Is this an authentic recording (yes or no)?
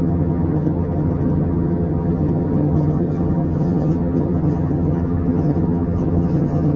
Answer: no